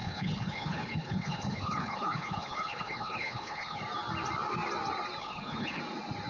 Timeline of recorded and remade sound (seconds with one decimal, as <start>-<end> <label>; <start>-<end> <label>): 0.0-3.8 remade; 3.8-5.2 recorded; 5.2-5.8 remade; 5.8-6.3 recorded